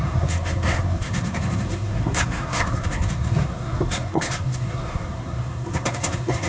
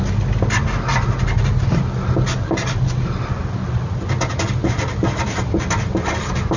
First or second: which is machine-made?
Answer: first